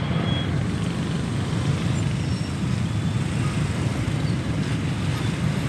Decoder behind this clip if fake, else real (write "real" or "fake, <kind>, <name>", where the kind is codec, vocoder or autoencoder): real